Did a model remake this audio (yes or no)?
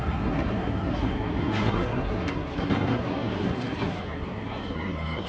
yes